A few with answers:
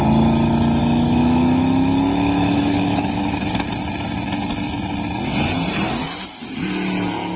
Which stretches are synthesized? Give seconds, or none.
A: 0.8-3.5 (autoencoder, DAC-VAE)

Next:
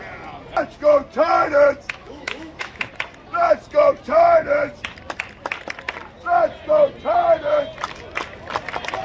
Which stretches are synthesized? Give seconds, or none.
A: 2.0-2.9 (autoencoder, DAC-VAE)

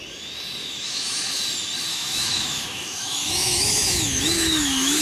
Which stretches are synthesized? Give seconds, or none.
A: 0.6-1.4 (autoencoder, DAC-VAE); 1.9-5.0

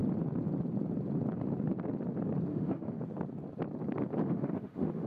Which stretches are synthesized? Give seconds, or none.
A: 2.5-3.0 (autoencoder, DAC-VAE); 4.2-5.1